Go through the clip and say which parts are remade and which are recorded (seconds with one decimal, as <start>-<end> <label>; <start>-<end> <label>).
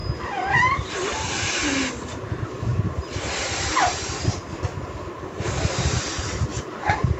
0.0-2.7 recorded; 2.7-4.1 remade; 4.1-6.5 recorded; 6.5-7.2 remade